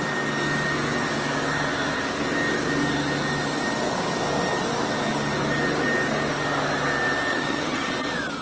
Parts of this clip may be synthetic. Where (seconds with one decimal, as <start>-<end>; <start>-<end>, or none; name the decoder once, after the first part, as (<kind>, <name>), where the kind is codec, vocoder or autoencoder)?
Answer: 7.3-7.9 (vocoder, HiFi-GAN)